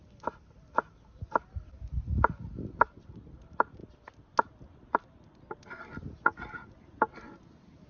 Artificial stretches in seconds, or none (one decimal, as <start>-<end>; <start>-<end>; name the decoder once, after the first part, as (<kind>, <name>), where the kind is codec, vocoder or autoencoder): none